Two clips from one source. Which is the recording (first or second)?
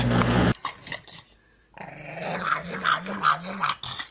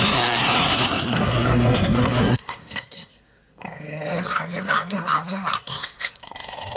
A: first